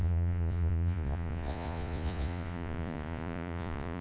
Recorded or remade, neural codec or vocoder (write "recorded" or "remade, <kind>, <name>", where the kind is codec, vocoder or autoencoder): remade, vocoder, Vocos